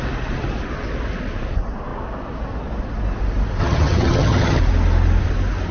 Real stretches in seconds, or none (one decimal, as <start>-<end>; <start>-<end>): 0.0-3.6; 4.6-5.7